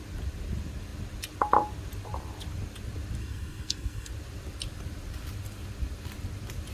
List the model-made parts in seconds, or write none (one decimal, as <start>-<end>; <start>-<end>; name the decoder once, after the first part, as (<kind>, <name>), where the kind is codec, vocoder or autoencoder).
3.2-4.1 (codec, SNAC)